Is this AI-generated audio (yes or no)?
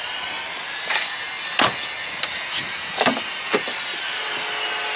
no